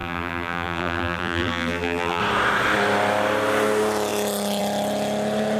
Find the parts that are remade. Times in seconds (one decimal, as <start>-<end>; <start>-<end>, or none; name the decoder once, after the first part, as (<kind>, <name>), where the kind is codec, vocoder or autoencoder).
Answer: 0.0-2.2 (vocoder, BigVGAN v2)